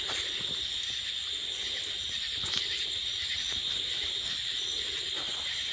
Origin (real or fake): real